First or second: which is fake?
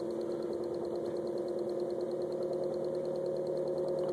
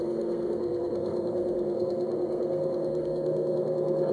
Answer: second